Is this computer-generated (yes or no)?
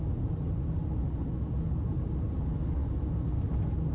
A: no